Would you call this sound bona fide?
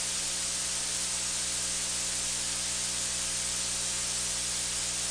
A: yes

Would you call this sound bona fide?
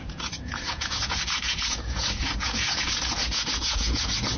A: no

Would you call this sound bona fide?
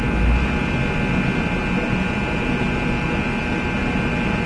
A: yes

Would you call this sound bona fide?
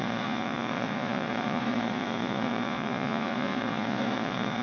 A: no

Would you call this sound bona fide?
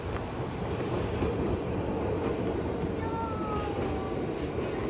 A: yes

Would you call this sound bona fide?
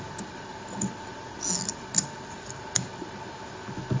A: yes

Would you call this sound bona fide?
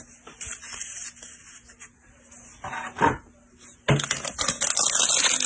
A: yes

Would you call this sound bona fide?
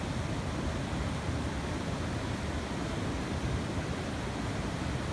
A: yes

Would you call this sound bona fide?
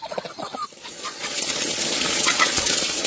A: no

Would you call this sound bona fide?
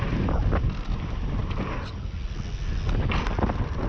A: yes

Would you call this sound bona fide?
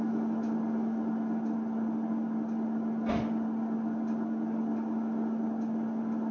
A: yes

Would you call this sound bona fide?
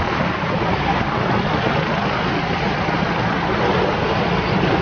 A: yes